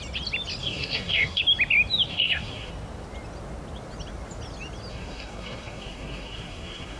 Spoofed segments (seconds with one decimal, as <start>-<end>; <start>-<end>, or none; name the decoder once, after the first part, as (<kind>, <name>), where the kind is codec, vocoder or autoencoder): 0.6-1.4 (codec, SNAC); 2.1-2.7; 4.9-7.0